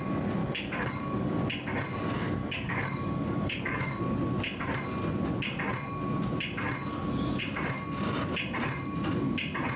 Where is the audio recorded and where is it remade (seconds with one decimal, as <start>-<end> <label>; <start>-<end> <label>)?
0.0-0.4 recorded; 0.4-1.4 remade; 1.4-2.4 recorded; 2.4-4.0 remade; 4.0-6.9 recorded; 6.9-7.4 remade; 7.4-9.8 recorded